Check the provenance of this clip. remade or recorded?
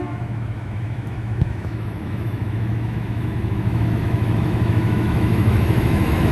remade